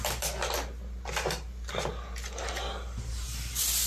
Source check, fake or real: real